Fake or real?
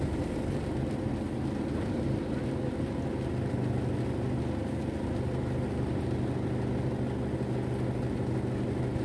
real